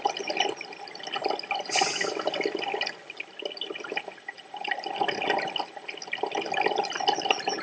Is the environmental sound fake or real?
real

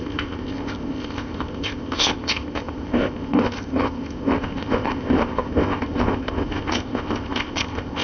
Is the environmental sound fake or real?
fake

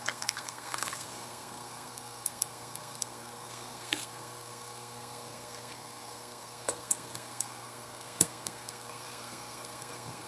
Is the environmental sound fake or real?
fake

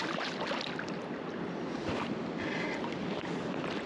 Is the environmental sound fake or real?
real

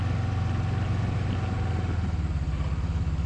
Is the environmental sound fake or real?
real